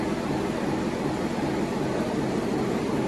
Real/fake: real